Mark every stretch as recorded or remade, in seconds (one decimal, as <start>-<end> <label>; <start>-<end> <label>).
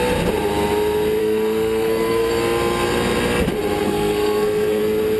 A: 0.0-1.2 recorded; 1.2-2.3 remade; 2.3-3.8 recorded; 3.8-4.8 remade; 4.8-5.2 recorded